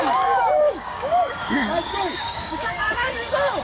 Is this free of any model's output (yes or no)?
no